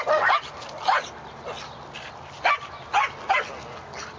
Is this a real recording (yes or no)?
yes